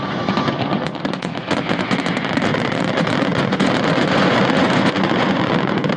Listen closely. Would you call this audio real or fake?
fake